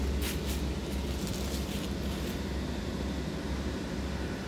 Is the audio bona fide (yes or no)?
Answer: yes